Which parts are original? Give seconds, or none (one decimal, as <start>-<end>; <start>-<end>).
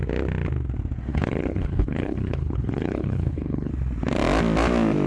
0.0-1.1; 3.7-5.1